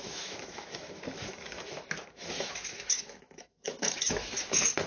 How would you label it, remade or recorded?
remade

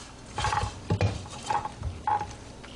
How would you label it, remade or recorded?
recorded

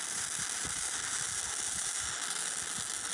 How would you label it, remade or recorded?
recorded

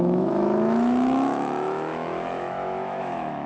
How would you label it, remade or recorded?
remade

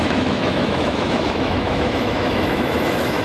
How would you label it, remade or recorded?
remade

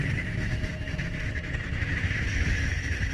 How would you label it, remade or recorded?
remade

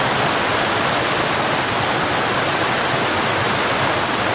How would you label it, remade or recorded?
recorded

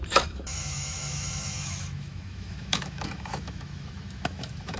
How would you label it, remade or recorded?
remade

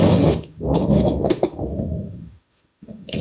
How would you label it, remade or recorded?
remade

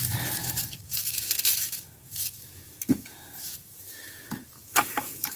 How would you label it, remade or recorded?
remade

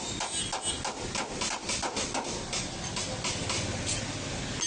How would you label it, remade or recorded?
recorded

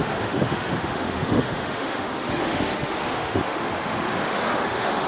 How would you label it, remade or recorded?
remade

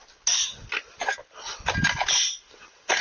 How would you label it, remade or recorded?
recorded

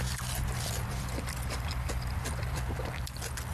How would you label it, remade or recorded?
recorded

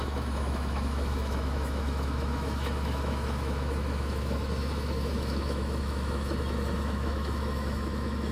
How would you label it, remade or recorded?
remade